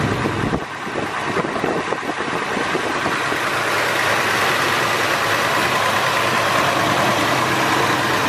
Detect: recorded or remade recorded